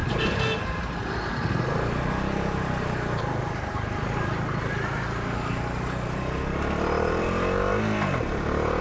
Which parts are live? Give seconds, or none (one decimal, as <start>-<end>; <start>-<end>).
0.0-8.8